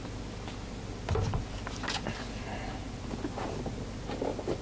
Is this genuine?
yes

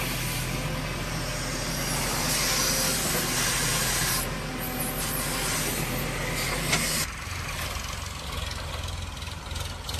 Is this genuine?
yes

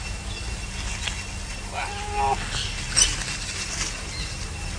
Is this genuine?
yes